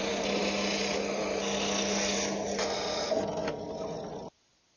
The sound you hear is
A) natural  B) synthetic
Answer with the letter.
A